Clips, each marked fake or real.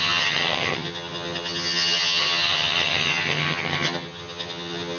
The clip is fake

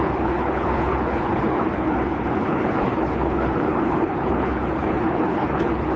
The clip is fake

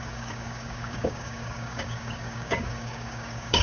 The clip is fake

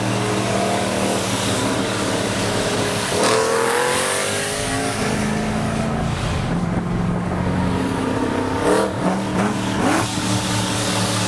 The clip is fake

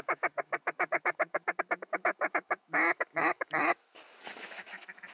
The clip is fake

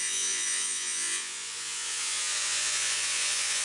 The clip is fake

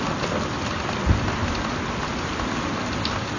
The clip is real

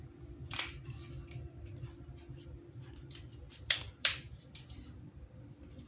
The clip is fake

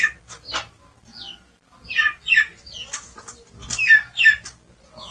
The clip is real